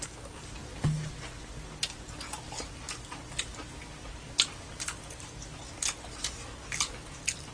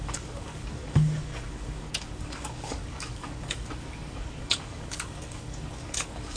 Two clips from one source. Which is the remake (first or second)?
second